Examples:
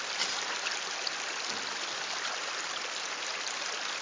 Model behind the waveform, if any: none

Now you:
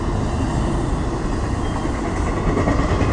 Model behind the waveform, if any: none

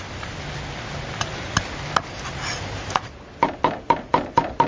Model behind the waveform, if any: none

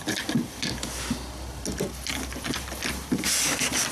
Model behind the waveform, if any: none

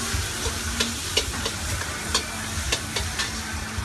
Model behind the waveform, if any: none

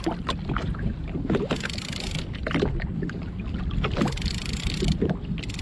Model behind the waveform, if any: none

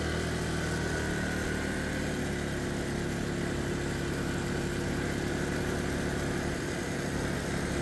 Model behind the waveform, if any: none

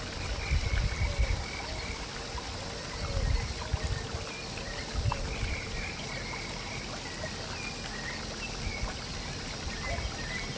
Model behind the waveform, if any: none